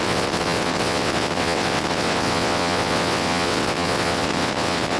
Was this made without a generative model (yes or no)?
no